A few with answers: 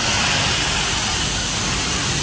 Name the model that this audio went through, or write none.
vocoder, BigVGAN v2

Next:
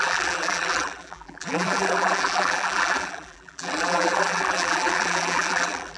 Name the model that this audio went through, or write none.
vocoder, BigVGAN v2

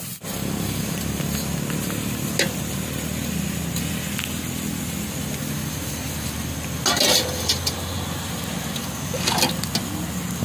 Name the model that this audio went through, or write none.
none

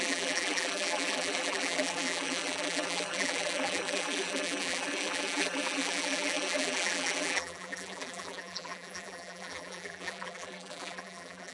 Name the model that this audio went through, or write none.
vocoder, BigVGAN v2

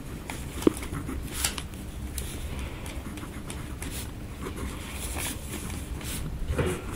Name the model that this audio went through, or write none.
vocoder, BigVGAN v2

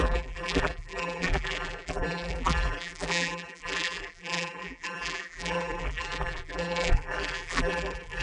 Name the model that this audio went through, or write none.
vocoder, BigVGAN v2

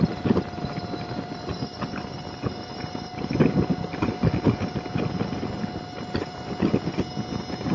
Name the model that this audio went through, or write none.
none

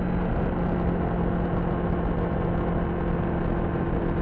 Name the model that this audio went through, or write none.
none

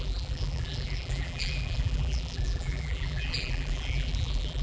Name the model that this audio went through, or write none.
vocoder, BigVGAN v2